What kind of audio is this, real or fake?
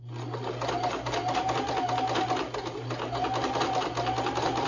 real